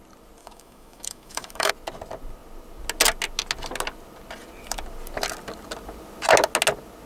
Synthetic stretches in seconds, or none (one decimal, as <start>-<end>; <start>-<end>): 0.4-1.7